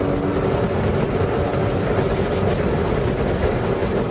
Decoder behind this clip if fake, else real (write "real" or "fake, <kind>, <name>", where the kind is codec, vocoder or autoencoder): real